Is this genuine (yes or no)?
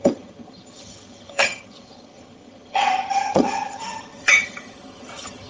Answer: no